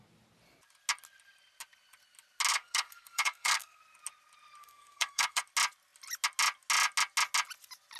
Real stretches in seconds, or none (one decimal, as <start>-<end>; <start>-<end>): 0.0-2.5; 3.8-4.6; 5.4-8.0